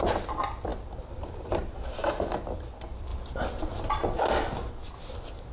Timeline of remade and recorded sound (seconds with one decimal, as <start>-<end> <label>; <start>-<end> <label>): 0.0-5.5 recorded